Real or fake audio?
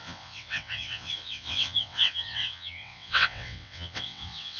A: fake